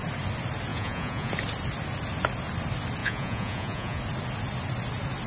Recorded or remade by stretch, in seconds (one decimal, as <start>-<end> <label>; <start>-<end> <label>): 0.0-0.7 recorded; 0.7-1.3 remade; 1.3-3.0 recorded; 3.0-4.0 remade; 4.0-5.3 recorded